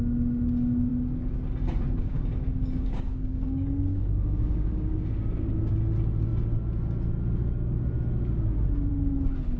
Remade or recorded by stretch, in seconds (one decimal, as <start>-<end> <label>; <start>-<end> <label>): 0.0-2.0 recorded; 2.0-5.7 remade; 5.7-9.6 recorded